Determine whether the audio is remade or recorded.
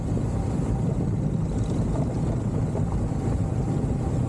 recorded